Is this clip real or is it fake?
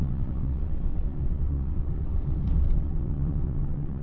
fake